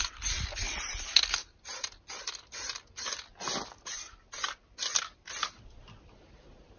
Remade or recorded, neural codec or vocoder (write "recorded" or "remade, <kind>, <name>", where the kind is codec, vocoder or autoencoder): recorded